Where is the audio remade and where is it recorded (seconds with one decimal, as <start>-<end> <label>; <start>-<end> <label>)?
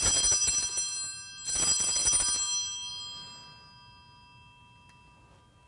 0.0-5.7 recorded